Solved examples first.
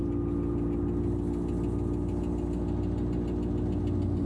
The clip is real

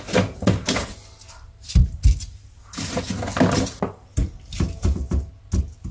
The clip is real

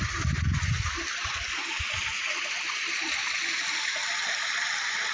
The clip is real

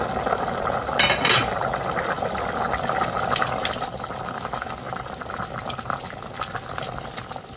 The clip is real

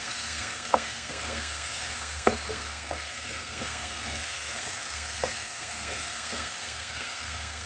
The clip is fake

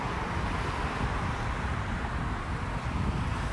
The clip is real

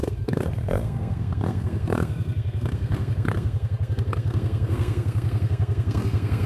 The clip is fake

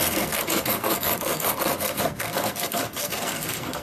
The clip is fake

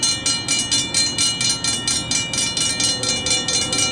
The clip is real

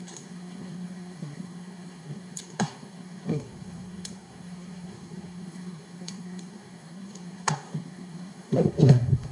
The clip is fake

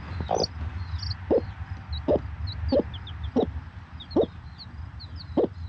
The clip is real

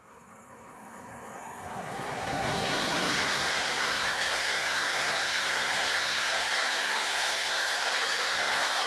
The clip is fake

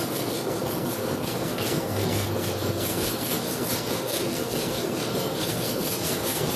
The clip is fake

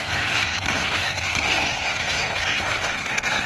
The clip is fake